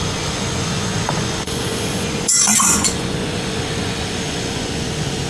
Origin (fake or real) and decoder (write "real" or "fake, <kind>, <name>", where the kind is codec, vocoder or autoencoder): fake, vocoder, Vocos